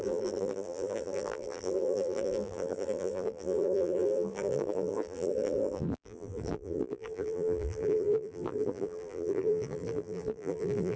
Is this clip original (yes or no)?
no